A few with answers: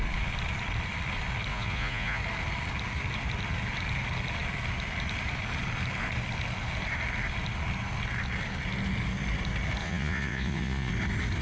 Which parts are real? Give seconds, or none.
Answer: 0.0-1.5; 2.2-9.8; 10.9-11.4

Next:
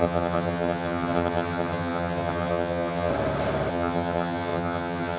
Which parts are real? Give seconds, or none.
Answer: 3.1-3.7

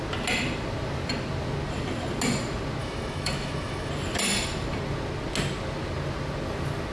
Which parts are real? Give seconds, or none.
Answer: 0.0-2.8; 3.9-6.9